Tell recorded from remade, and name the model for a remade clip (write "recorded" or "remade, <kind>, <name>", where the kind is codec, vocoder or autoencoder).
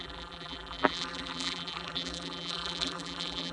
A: remade, vocoder, BigVGAN v2